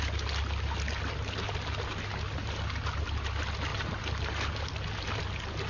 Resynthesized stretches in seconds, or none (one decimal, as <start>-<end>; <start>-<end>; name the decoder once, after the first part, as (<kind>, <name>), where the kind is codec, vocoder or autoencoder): none